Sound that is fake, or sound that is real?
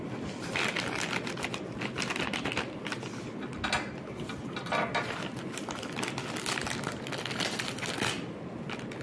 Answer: real